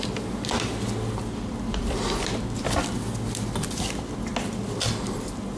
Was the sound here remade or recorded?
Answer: recorded